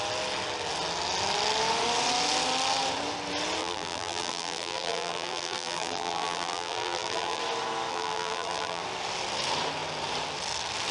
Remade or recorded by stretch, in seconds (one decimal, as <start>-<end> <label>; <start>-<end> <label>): 0.0-3.6 recorded; 3.6-7.4 remade; 7.4-7.9 recorded; 7.9-8.8 remade; 8.8-10.9 recorded